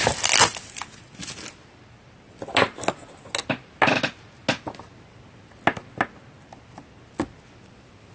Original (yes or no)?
yes